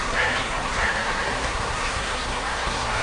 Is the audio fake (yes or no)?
yes